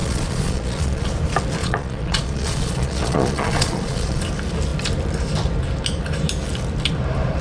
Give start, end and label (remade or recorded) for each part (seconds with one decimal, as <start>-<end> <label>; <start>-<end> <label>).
0.0-1.1 remade; 1.1-1.6 recorded; 1.6-4.2 remade; 4.2-7.4 recorded